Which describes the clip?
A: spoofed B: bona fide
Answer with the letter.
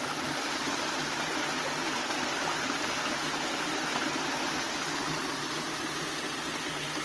B